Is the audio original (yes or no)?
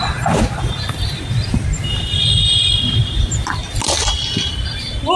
yes